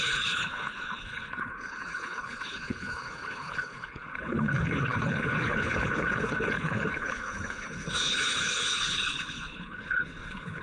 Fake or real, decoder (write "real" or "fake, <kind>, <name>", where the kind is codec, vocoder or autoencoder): fake, codec, HILCodec